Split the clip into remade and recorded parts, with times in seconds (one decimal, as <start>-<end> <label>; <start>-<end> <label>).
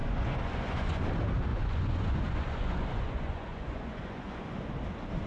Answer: 0.0-1.0 remade; 1.0-1.5 recorded; 1.5-4.7 remade; 4.7-5.3 recorded